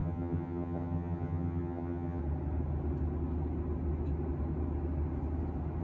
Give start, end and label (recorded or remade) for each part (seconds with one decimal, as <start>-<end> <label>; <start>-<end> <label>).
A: 0.0-2.2 remade; 2.2-5.8 recorded